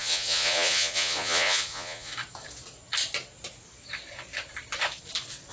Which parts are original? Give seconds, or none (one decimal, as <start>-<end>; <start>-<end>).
2.1-5.5